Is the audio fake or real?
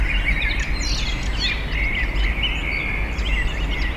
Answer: real